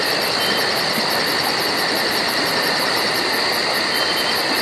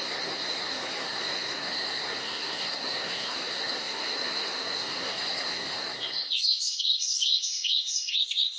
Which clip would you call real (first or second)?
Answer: first